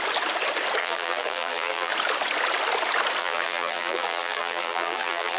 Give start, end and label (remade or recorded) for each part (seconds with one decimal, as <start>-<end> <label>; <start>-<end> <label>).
0.0-0.8 recorded; 0.8-1.9 remade; 1.9-3.2 recorded; 3.2-5.4 remade